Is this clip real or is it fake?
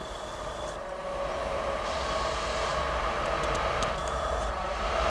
real